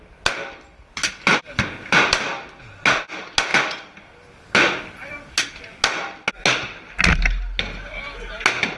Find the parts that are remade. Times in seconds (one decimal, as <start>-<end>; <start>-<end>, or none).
none